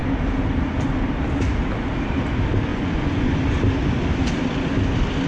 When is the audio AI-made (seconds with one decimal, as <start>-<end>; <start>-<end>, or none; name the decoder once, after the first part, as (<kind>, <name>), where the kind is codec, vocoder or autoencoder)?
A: 2.7-3.3 (vocoder, Vocos)